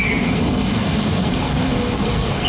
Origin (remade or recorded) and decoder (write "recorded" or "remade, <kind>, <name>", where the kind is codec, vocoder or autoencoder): remade, codec, SNAC